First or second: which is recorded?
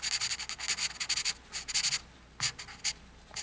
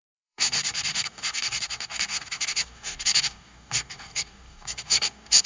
first